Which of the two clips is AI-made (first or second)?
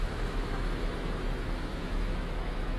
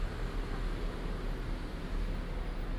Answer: first